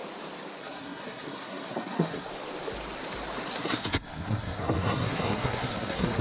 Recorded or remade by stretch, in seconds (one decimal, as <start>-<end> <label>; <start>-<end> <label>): 0.0-0.6 recorded; 0.6-2.3 remade; 2.3-3.5 recorded; 3.5-6.2 remade